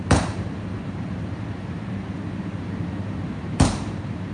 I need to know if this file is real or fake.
fake